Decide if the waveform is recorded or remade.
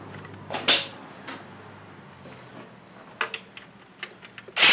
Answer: recorded